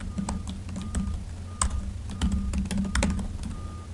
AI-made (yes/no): no